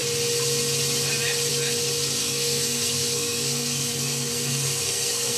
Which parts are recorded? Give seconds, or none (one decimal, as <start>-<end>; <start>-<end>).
0.0-2.2